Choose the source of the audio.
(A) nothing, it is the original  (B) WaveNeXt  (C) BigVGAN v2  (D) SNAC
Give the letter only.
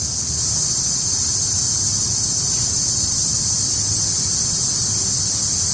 A